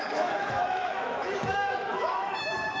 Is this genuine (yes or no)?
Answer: no